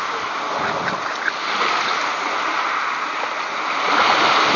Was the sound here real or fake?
real